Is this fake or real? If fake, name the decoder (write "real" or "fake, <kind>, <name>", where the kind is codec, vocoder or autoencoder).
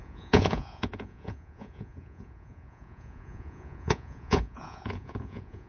fake, vocoder, Vocos